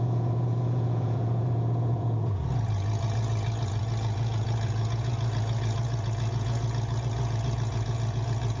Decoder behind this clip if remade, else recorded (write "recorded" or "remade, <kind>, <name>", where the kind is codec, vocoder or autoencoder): remade, vocoder, Vocos